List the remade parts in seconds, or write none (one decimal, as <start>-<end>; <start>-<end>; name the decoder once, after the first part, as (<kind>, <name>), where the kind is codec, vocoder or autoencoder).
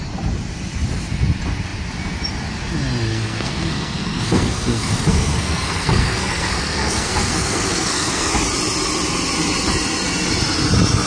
3.1-8.3 (codec, SNAC)